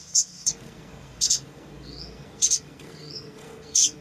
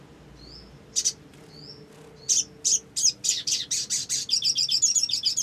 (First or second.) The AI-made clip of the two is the first